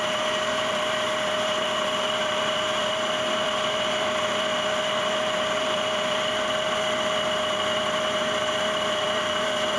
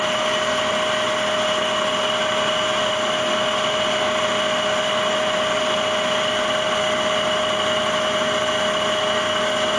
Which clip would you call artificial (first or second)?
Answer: first